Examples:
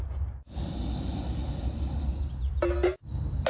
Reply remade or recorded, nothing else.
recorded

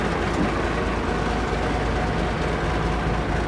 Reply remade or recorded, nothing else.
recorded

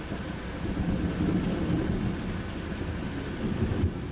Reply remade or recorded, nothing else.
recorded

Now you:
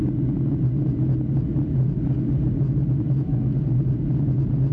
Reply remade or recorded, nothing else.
recorded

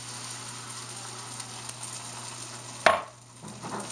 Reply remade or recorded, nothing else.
recorded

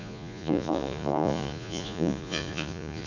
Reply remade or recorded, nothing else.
remade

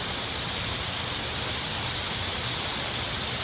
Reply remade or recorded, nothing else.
recorded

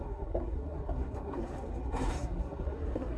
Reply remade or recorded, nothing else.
remade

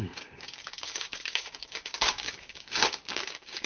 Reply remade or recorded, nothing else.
remade